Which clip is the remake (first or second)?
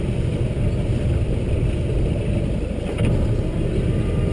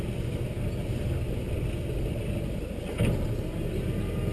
first